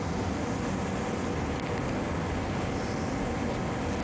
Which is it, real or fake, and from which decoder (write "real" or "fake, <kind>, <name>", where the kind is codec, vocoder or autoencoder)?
real